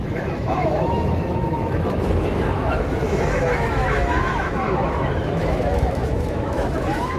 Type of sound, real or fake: fake